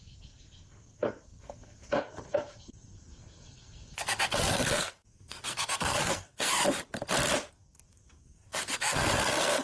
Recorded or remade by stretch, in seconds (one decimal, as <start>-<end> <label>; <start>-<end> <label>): 0.0-6.6 remade; 6.6-7.5 recorded; 7.5-9.6 remade